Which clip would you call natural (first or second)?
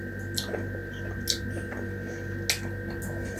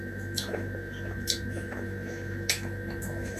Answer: first